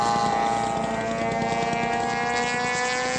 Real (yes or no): yes